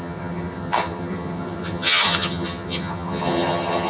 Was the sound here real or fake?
fake